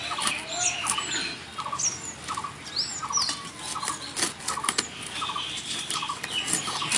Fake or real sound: real